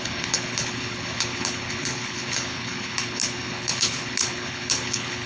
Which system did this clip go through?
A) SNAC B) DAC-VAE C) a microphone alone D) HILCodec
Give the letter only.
D